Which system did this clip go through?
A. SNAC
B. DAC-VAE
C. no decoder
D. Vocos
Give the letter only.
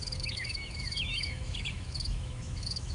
B